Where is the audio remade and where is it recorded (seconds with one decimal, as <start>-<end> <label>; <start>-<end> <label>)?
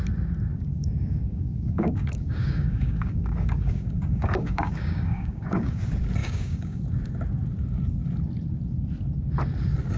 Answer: 0.0-0.5 recorded; 0.5-5.8 remade; 5.8-6.2 recorded; 6.2-6.8 remade; 6.8-10.0 recorded